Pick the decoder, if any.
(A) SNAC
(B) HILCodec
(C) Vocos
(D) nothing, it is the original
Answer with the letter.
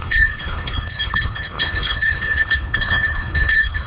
B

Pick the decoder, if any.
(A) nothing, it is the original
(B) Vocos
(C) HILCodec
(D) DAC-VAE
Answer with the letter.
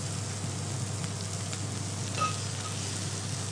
A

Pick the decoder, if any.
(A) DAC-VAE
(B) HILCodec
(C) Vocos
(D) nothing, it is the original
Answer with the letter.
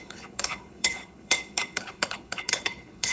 B